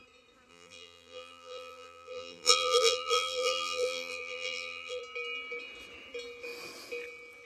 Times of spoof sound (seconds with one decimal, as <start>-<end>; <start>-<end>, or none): 0.5-5.0